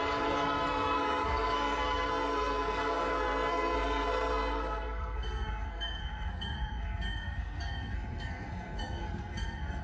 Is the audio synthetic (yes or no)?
yes